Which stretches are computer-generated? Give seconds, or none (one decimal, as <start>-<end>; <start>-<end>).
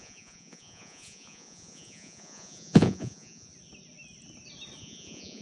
0.0-3.5; 4.8-5.4